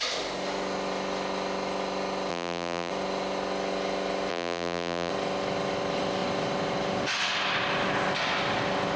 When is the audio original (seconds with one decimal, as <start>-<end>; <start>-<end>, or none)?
0.0-2.3; 2.9-4.3; 5.1-9.0